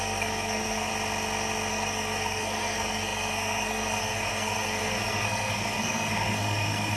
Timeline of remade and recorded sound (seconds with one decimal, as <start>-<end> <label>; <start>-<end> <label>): 0.0-0.9 remade; 0.9-1.7 recorded; 1.7-7.0 remade